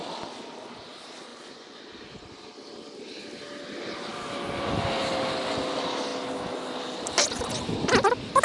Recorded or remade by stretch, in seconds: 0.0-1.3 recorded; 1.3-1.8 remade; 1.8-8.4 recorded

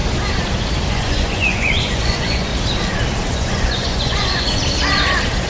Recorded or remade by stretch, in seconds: 0.0-0.9 recorded; 0.9-2.5 remade; 2.5-3.3 recorded; 3.3-4.6 remade; 4.6-5.5 recorded

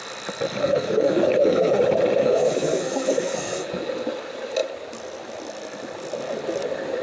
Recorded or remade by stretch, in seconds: 0.0-0.6 recorded; 0.6-1.8 remade; 1.8-2.2 recorded; 2.2-3.7 remade; 3.7-7.0 recorded

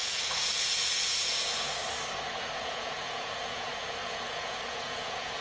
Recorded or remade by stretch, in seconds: 0.0-1.8 remade; 1.8-2.4 recorded; 2.4-5.4 remade